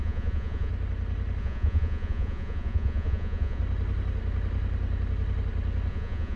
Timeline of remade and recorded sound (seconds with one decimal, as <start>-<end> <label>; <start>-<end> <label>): 0.0-0.7 remade; 0.7-1.4 recorded; 1.4-3.6 remade; 3.6-5.9 recorded; 5.9-6.4 remade